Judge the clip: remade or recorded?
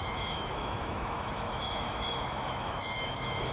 remade